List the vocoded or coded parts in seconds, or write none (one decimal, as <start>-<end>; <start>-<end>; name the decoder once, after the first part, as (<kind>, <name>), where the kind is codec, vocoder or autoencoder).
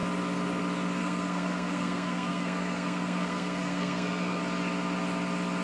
1.0-4.4 (codec, SNAC)